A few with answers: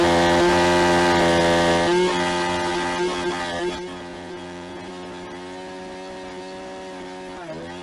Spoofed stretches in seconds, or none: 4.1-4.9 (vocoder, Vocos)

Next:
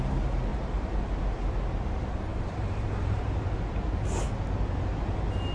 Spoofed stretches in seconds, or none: 0.5-1.1 (vocoder, BigVGAN v2); 2.3-3.2

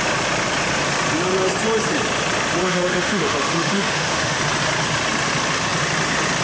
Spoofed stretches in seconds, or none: 2.6-4.4 (autoencoder, DAC-VAE)

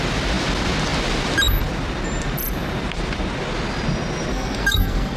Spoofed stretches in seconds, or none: 4.3-5.2 (codec, SNAC)

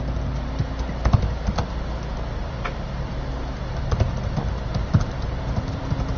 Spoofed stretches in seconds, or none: 2.4-6.2 (vocoder, BigVGAN v2)

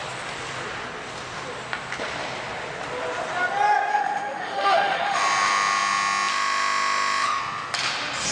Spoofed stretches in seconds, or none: 3.9-5.2 (autoencoder, DAC-VAE); 6.3-7.4

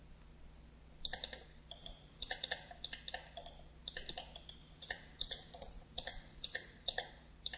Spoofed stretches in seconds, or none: 1.8-2.7 (vocoder, Vocos); 4.6-7.1